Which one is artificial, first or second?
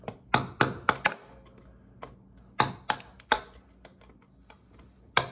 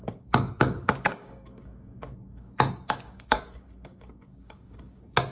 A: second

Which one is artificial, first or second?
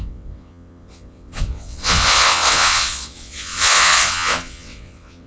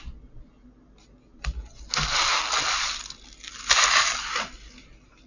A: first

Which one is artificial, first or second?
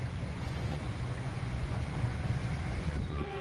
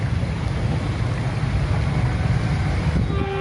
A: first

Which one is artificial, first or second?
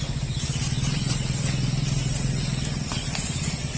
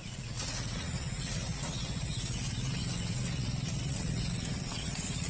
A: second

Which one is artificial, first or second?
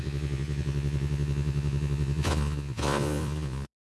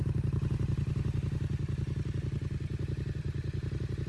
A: first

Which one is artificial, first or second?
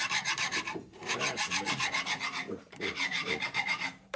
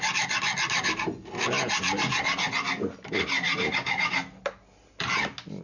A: first